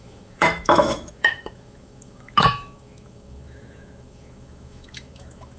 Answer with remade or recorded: remade